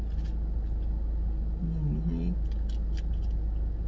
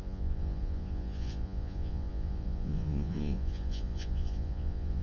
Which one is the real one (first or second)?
first